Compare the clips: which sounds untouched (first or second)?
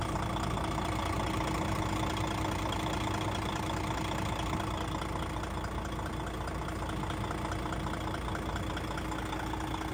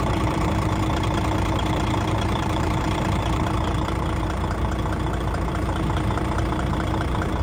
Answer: first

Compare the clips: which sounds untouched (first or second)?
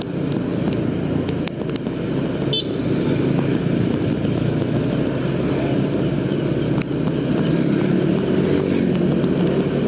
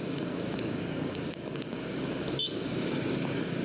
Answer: first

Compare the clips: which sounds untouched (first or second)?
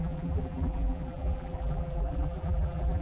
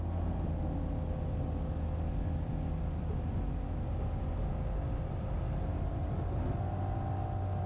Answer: second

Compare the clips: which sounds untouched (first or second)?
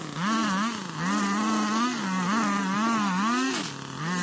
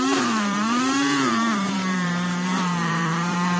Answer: first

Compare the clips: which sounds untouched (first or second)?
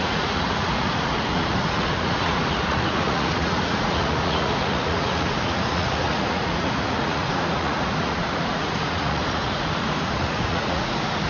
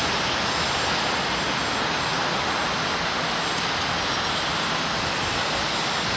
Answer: second